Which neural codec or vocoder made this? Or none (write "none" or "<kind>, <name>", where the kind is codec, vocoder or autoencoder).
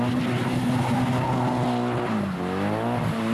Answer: none